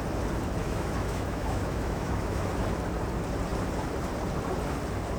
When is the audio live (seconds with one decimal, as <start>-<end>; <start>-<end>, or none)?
0.0-0.6; 2.5-5.2